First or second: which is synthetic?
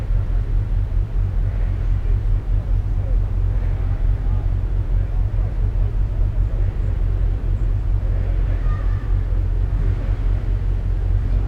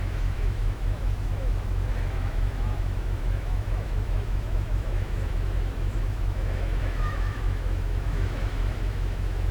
second